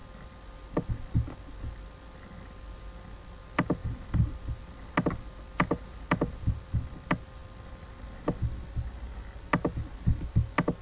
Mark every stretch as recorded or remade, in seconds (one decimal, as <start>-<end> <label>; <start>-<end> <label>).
0.0-10.8 recorded